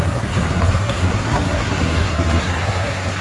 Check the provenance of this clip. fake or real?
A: fake